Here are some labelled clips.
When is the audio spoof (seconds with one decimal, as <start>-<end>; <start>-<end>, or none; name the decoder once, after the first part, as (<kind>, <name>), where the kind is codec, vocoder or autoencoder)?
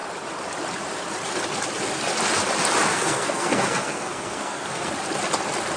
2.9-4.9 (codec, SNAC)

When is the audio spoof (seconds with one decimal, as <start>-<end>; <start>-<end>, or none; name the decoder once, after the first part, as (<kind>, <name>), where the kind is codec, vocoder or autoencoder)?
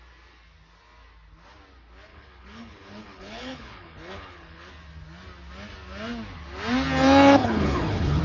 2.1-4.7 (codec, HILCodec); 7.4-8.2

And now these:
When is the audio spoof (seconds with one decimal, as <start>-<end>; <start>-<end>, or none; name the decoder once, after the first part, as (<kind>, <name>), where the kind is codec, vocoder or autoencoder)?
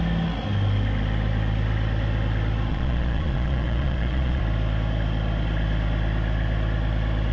2.7-4.4 (vocoder, Vocos)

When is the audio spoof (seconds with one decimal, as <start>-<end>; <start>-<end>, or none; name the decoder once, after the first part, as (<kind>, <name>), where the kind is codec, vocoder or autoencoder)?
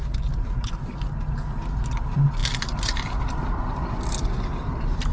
none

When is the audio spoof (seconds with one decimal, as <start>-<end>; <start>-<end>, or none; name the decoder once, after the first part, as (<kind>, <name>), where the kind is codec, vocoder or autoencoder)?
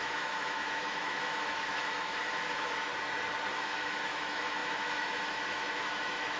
0.0-2.9 (autoencoder, DAC-VAE); 3.5-6.4